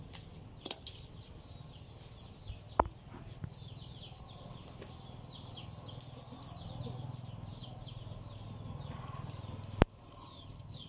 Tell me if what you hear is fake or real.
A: real